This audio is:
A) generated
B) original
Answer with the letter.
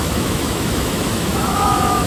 A